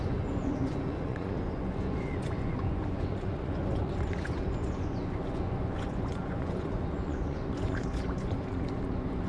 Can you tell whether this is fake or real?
fake